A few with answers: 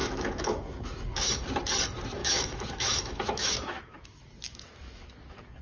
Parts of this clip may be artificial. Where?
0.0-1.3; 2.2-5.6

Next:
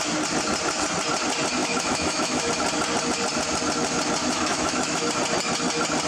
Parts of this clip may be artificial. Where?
1.6-2.5; 4.2-5.1

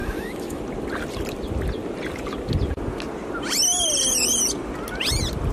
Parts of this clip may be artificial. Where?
0.0-0.6

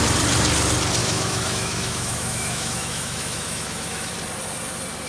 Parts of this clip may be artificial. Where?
1.0-4.1